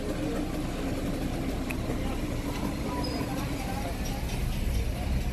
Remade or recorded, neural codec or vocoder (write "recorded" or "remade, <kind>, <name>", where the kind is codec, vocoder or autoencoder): recorded